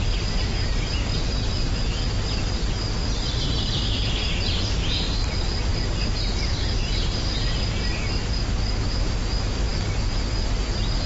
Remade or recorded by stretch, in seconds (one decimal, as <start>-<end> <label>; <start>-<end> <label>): 0.0-11.1 recorded